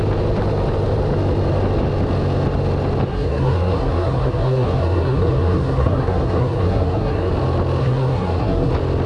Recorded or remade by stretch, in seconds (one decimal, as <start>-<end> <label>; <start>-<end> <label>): 0.0-3.1 recorded; 3.1-7.3 remade; 7.3-7.8 recorded; 7.8-8.7 remade; 8.7-9.1 recorded